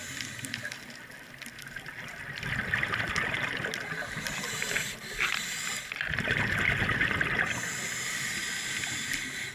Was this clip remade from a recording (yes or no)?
no